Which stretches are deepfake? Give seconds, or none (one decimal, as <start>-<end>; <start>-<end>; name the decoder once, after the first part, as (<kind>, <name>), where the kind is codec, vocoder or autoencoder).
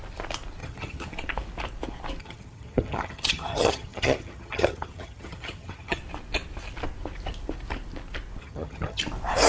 0.6-1.1 (vocoder, HiFi-GAN); 2.2-6.0; 8.4-9.0